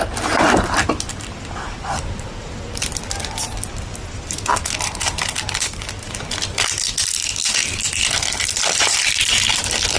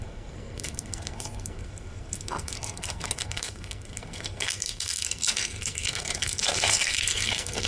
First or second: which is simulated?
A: second